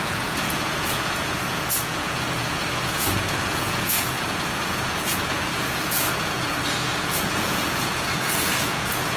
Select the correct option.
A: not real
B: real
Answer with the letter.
A